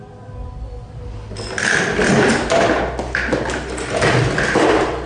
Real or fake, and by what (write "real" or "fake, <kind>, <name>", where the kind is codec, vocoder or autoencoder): real